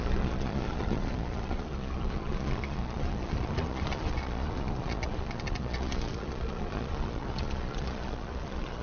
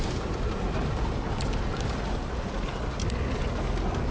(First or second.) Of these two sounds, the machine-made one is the first